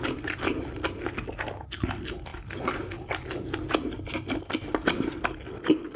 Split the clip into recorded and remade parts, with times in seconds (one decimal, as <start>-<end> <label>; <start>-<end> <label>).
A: 0.0-6.0 recorded